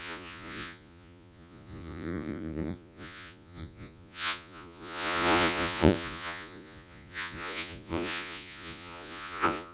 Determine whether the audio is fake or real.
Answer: fake